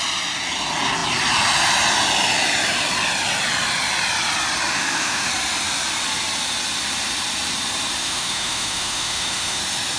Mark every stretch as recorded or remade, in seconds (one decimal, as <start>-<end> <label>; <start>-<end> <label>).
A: 0.0-4.7 recorded; 4.7-5.3 remade; 5.3-8.0 recorded; 8.0-9.6 remade; 9.6-10.0 recorded